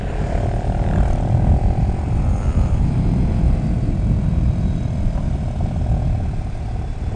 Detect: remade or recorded recorded